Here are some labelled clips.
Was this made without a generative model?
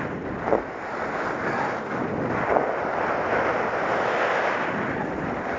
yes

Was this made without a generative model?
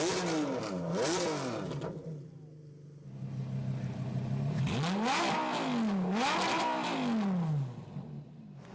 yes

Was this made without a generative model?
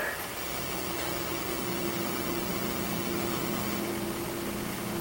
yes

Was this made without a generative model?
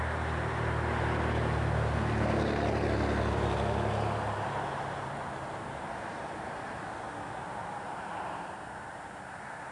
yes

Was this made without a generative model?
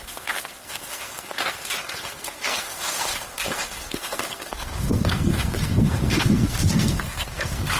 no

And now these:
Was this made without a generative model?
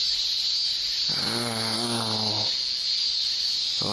yes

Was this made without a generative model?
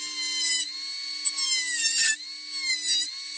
yes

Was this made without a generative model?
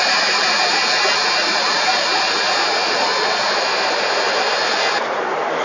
yes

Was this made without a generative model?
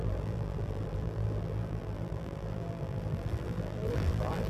no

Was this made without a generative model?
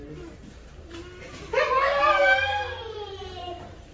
no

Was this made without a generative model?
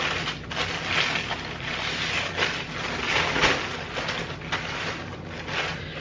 yes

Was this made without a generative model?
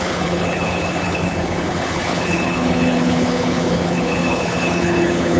no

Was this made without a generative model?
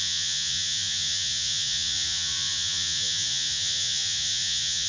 no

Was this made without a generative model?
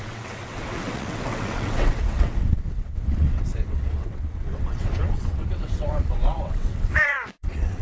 no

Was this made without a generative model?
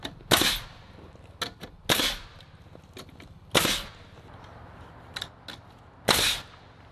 yes